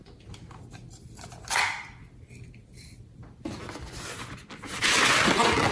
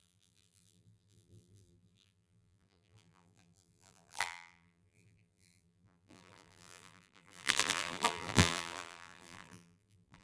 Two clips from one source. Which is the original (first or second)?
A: first